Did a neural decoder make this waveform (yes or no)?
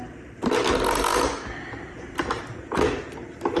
no